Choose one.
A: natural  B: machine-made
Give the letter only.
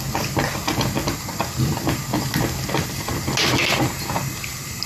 A